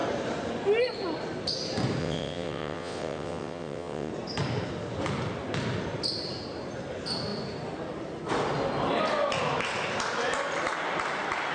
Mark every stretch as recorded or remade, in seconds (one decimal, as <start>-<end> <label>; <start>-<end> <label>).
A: 0.0-2.0 recorded; 2.0-4.1 remade; 4.1-11.5 recorded